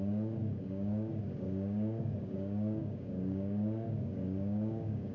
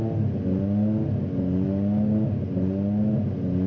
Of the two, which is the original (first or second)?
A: second